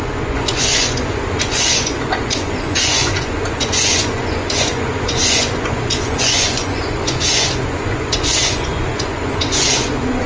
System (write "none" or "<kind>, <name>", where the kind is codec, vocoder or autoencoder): vocoder, Vocos